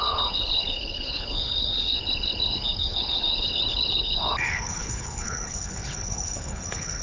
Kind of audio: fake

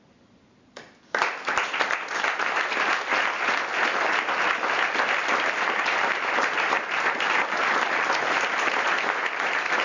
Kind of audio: real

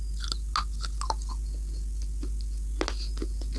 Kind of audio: real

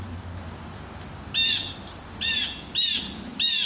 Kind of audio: real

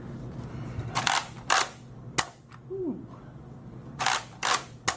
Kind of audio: real